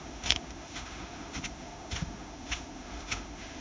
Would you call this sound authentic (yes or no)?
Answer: no